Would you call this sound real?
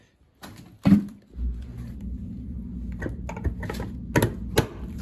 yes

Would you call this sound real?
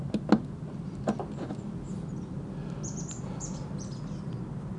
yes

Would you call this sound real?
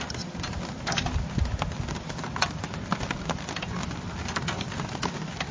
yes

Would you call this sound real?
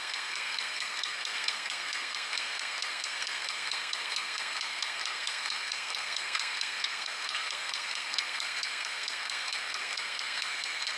no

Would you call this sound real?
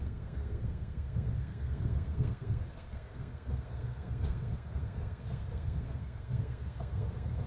no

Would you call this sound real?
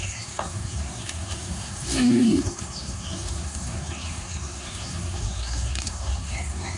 no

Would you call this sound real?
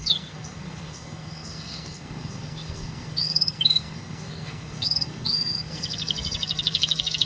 no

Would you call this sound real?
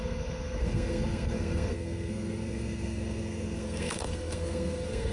no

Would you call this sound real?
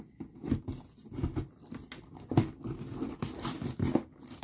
yes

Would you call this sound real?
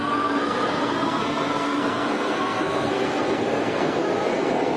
no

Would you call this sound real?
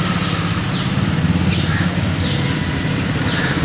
yes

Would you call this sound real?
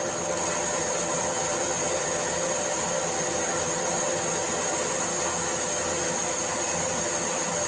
yes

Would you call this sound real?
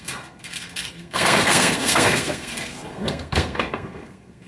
no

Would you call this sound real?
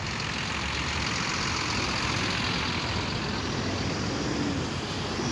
yes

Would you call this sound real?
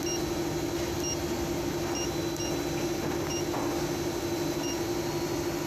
yes